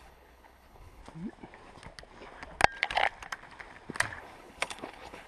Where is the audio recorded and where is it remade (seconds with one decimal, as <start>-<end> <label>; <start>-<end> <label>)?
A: 0.0-1.0 remade; 1.0-4.2 recorded; 4.2-5.3 remade